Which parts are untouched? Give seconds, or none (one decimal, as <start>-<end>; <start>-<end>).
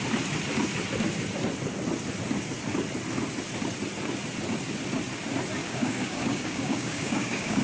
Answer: 0.0-5.6